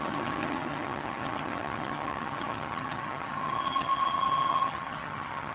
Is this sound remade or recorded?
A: remade